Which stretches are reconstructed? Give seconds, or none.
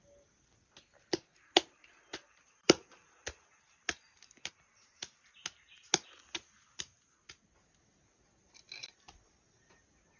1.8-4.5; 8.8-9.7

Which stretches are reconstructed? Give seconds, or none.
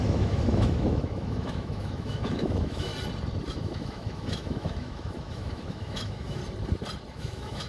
0.0-2.9; 3.5-6.4; 7.1-7.7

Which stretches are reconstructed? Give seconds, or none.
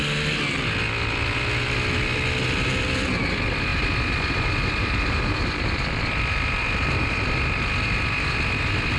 none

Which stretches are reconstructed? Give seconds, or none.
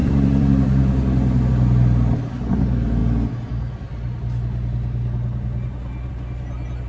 0.0-1.5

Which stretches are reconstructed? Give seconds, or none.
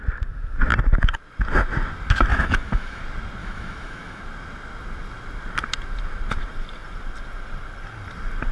2.3-3.0; 3.4-4.2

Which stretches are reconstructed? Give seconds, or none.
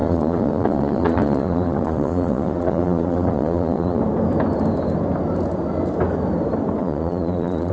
0.0-4.0; 6.8-7.7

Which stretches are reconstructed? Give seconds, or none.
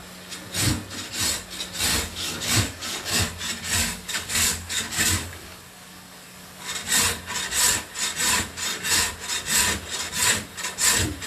1.9-3.2; 3.8-6.7